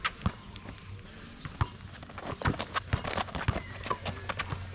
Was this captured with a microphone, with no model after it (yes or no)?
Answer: yes